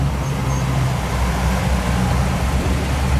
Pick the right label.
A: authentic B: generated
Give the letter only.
A